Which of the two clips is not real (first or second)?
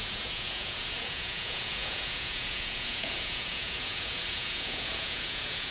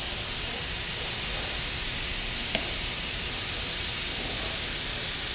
first